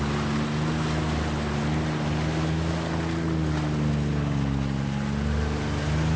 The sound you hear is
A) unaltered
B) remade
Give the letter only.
A